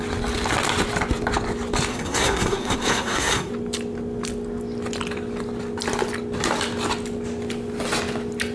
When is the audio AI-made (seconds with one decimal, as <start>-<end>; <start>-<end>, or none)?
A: 1.9-3.5